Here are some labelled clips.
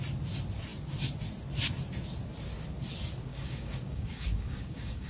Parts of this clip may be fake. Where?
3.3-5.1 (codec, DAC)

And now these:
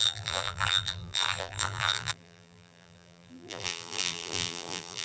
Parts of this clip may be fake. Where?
0.0-5.0 (vocoder, BigVGAN v2)

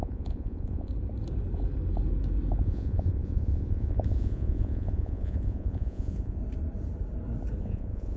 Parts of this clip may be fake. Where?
0.0-0.9 (vocoder, Vocos); 2.6-6.4; 7.6-8.2

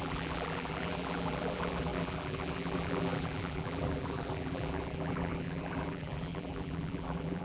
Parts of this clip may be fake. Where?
0.0-7.4 (vocoder, BigVGAN v2)